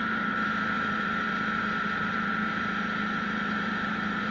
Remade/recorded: remade